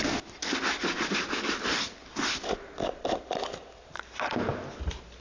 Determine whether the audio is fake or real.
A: real